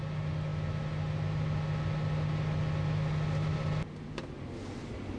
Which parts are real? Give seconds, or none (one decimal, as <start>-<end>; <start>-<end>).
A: 0.0-5.2